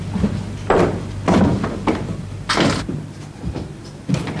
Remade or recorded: recorded